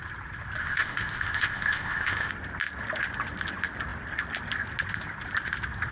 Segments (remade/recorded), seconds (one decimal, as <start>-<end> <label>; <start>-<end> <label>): 0.0-0.6 recorded; 0.6-2.3 remade; 2.3-5.9 recorded

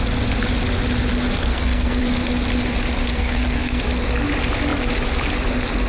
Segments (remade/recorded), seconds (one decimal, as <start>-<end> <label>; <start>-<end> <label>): 0.0-1.5 recorded; 1.5-2.0 remade; 2.0-3.1 recorded; 3.1-3.8 remade; 3.8-5.9 recorded

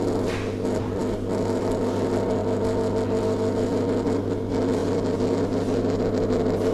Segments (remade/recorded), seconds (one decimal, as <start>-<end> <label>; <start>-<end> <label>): 0.0-6.7 recorded

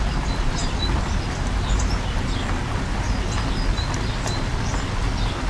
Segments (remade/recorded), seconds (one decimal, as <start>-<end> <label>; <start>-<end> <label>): 0.0-5.5 recorded

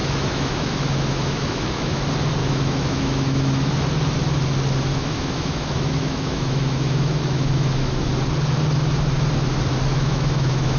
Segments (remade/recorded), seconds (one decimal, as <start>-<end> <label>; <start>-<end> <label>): 0.0-2.0 remade; 2.0-2.4 recorded; 2.4-3.7 remade; 3.7-4.9 recorded; 4.9-8.1 remade; 8.1-9.9 recorded; 9.9-10.8 remade

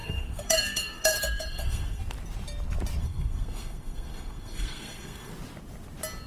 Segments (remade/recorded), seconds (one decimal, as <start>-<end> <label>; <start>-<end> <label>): 0.0-2.0 remade; 2.0-3.0 recorded; 3.0-5.3 remade; 5.3-6.3 recorded

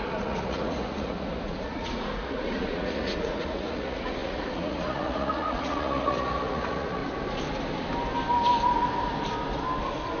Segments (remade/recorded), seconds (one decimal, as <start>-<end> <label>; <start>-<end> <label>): 0.0-7.0 remade; 7.0-10.2 recorded

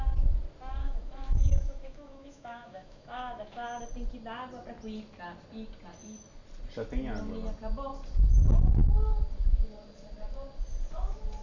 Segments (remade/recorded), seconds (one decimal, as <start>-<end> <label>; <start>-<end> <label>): 0.0-0.8 recorded; 0.8-3.8 remade; 3.8-11.4 recorded